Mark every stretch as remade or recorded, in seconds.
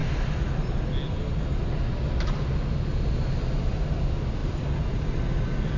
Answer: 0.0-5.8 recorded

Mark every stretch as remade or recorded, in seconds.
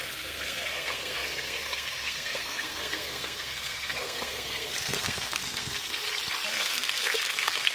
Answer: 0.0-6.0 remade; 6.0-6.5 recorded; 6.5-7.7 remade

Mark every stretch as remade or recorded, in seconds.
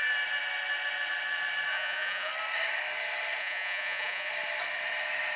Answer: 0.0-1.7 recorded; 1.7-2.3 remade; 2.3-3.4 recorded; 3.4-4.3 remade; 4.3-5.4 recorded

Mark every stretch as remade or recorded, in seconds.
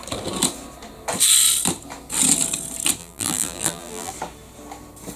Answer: 0.0-3.0 recorded; 3.0-4.1 remade; 4.1-5.2 recorded